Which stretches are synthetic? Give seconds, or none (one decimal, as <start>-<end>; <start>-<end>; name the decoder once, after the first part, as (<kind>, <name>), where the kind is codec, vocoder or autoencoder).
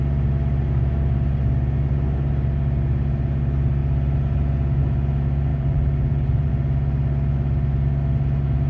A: 5.5-6.5 (vocoder, BigVGAN v2)